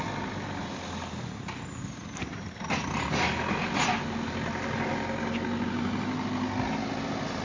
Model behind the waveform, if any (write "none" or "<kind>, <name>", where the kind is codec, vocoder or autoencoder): none